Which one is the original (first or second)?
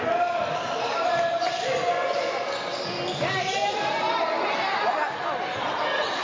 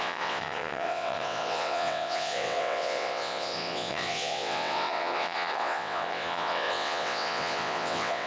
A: first